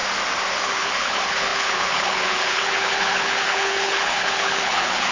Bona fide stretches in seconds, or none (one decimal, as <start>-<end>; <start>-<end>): 0.0-0.5

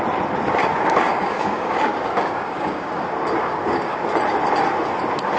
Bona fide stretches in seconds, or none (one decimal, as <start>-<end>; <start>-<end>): 0.0-0.6; 3.0-3.4; 4.0-5.4

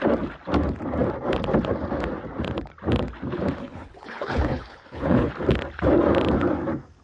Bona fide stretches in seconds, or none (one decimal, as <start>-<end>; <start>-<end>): 0.0-3.6; 5.3-7.0

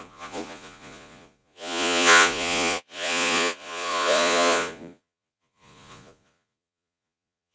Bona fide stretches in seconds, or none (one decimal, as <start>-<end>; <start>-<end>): none

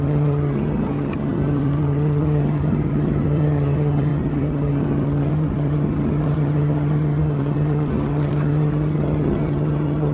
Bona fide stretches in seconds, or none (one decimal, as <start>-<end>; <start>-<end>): none

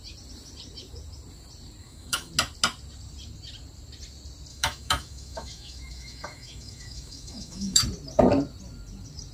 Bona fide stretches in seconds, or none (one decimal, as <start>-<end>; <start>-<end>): 0.0-1.8; 2.3-4.5; 7.8-9.3